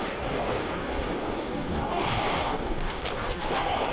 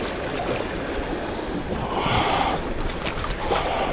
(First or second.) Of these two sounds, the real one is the second